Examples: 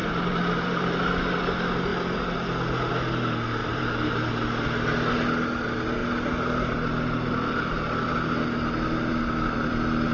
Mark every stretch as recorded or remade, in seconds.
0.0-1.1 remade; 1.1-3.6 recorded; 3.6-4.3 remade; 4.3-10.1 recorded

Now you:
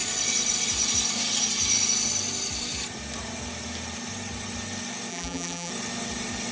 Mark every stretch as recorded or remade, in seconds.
0.0-5.1 recorded; 5.1-5.7 remade; 5.7-6.5 recorded

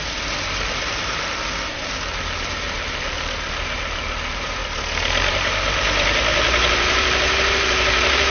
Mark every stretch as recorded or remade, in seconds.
0.0-4.6 remade; 4.6-5.3 recorded; 5.3-8.3 remade

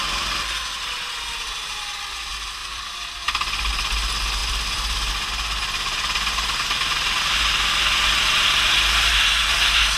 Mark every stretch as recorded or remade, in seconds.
0.0-2.6 recorded; 2.6-3.7 remade; 3.7-4.4 recorded; 4.4-5.1 remade; 5.1-10.0 recorded

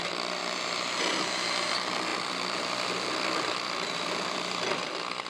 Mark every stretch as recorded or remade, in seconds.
0.0-0.4 remade; 0.4-1.7 recorded; 1.7-5.3 remade

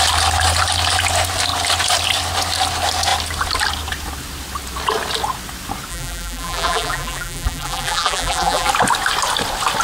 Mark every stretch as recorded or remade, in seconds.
0.0-5.9 recorded; 5.9-8.7 remade; 8.7-9.8 recorded

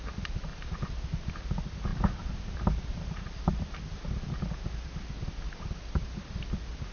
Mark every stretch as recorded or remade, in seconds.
0.0-0.5 recorded; 0.5-1.3 remade; 1.3-1.9 recorded; 1.9-3.8 remade; 3.8-6.9 recorded